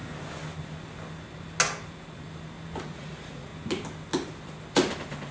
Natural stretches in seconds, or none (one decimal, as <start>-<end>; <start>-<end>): 0.0-2.8; 3.5-5.3